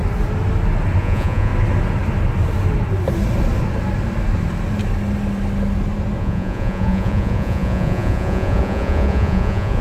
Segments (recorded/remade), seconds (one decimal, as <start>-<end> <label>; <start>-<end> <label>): 0.0-1.0 recorded; 1.0-1.5 remade; 1.5-6.2 recorded; 6.2-9.8 remade